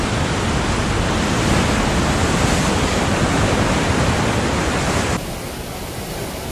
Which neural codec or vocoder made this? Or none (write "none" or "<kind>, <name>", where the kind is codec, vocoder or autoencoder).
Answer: none